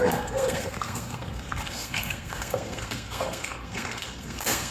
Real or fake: fake